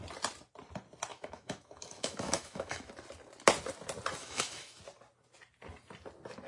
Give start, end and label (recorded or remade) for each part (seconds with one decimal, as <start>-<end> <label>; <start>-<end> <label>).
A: 0.0-1.1 recorded; 1.1-2.9 remade; 2.9-4.2 recorded; 4.2-4.8 remade; 4.8-6.5 recorded